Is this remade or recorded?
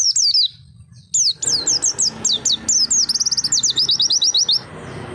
recorded